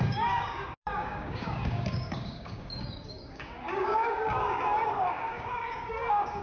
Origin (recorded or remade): remade